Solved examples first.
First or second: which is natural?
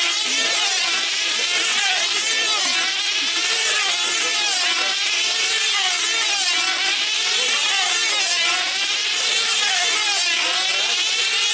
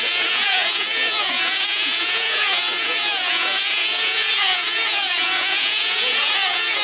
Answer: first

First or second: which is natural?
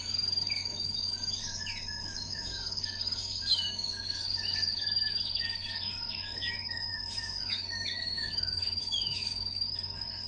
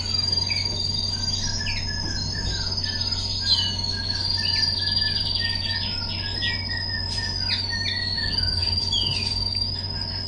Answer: second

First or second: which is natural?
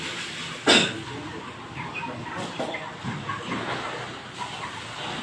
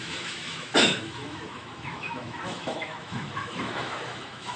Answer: first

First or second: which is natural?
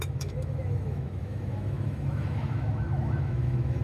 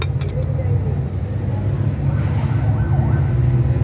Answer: second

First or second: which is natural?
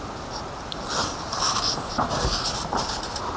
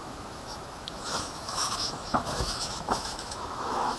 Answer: first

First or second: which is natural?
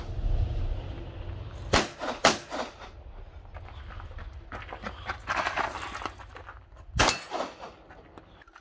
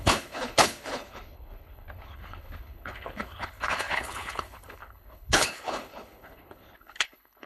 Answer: first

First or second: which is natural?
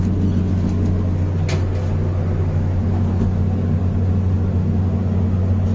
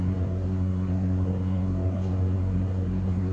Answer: first